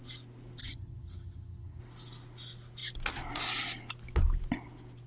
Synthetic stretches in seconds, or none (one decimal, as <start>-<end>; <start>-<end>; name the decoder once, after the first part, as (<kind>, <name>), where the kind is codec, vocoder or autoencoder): 0.6-1.8 (vocoder, HiFi-GAN)